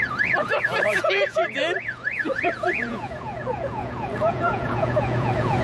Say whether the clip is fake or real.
fake